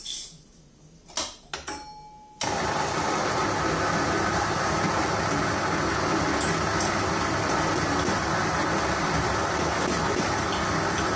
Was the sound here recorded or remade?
recorded